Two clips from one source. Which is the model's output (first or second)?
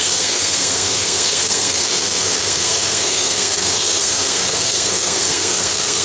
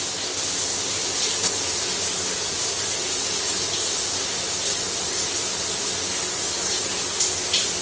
first